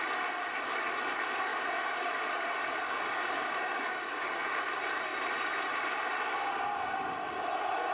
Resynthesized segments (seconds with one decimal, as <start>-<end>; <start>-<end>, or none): 1.5-2.1; 2.8-4.6